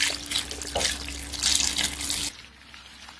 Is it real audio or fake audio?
real